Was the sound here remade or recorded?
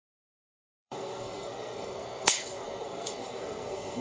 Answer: remade